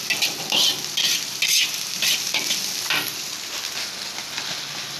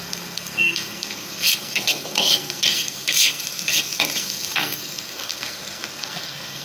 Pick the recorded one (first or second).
first